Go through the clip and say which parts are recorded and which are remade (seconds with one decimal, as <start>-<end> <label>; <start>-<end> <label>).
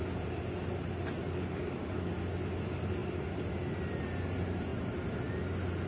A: 0.0-1.2 recorded; 1.2-2.1 remade; 2.1-5.9 recorded